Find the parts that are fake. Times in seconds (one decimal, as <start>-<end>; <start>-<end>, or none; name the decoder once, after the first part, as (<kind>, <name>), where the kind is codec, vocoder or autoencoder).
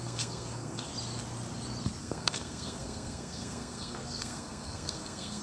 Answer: 0.0-0.9 (codec, SNAC); 2.0-5.4